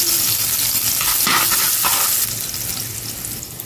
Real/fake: real